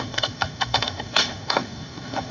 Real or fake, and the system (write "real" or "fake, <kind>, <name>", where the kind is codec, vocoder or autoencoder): fake, codec, SNAC